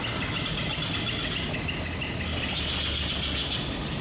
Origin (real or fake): real